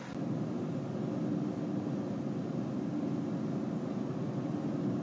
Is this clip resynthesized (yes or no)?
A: no